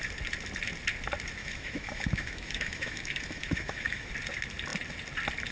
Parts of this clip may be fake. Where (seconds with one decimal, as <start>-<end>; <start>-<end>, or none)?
1.4-4.1